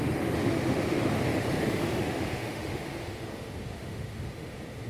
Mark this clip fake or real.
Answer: fake